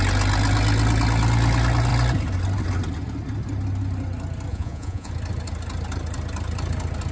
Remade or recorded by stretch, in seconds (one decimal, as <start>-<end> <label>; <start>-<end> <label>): 0.0-4.5 recorded; 4.5-5.1 remade; 5.1-7.1 recorded